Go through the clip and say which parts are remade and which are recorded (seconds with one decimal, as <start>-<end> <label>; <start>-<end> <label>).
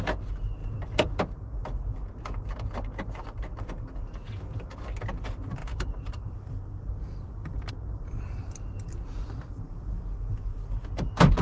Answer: 0.0-0.6 recorded; 0.6-1.2 remade; 1.2-5.6 recorded; 5.6-7.7 remade; 7.7-11.4 recorded